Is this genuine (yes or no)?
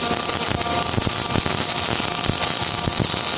yes